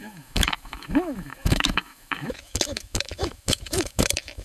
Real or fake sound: fake